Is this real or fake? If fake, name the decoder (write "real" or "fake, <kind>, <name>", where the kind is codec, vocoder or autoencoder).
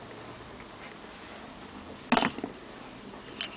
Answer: real